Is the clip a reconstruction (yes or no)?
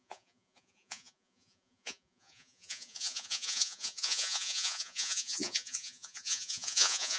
yes